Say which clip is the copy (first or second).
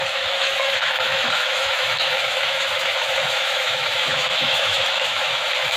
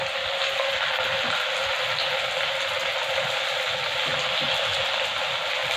first